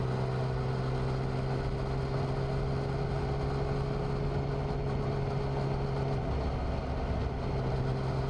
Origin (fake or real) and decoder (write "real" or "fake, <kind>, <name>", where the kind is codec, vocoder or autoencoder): real